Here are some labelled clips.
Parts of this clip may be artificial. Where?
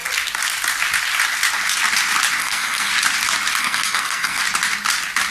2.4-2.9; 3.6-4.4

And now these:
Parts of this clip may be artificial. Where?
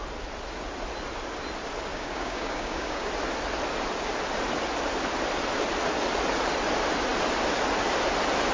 1.9-3.1